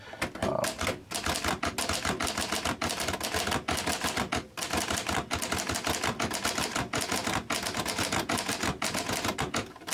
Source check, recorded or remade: recorded